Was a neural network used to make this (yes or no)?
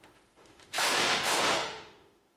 yes